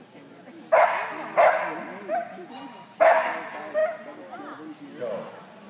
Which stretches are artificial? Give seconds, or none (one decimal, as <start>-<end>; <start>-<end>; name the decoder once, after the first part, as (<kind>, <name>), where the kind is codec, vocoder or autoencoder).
none